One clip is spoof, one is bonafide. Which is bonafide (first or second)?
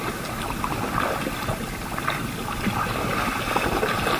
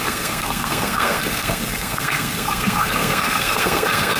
first